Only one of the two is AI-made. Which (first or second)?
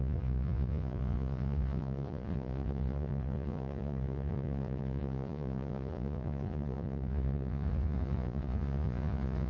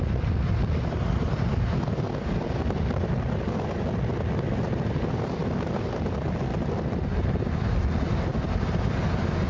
first